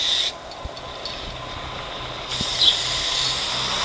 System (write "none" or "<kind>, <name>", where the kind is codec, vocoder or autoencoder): none